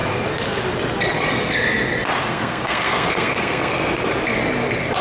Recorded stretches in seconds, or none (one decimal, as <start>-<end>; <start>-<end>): 0.0-2.3; 3.7-5.0